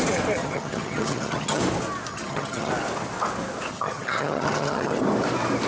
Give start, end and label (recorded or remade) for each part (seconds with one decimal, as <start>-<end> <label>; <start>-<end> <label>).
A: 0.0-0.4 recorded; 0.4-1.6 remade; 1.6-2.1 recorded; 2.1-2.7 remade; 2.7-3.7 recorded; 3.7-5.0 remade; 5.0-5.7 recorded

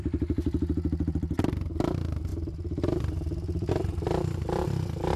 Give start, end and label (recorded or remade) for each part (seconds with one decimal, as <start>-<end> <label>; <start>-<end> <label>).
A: 0.0-5.2 remade

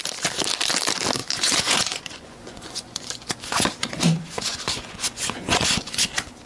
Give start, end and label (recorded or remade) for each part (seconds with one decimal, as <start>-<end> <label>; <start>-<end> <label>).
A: 0.0-1.2 recorded; 1.2-3.3 remade; 3.3-3.8 recorded; 3.8-6.0 remade; 6.0-6.5 recorded

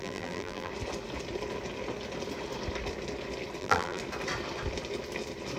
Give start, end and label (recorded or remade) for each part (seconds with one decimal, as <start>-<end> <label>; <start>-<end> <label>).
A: 0.0-0.7 remade; 0.7-3.6 recorded; 3.6-4.0 remade; 4.0-5.6 recorded